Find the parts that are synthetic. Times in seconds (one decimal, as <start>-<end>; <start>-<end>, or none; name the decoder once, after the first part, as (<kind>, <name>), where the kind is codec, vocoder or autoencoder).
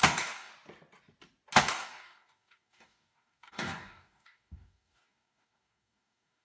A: 0.0-0.5 (codec, DAC); 1.6-6.4